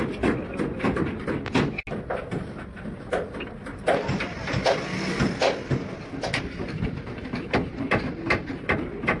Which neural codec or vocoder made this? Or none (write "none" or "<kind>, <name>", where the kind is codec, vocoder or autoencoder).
none